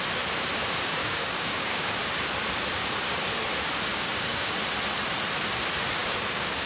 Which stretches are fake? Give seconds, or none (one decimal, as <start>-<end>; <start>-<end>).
1.0-1.9; 3.9-4.5; 6.0-6.7